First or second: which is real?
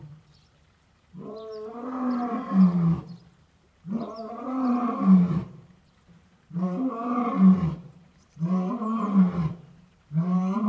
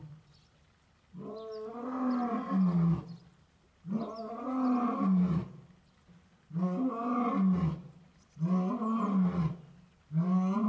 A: second